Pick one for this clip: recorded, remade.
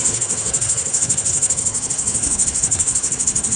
remade